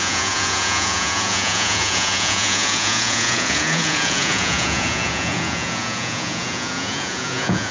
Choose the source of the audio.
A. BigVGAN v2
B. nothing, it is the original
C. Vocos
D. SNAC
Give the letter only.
C